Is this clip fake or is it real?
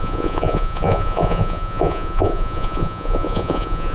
fake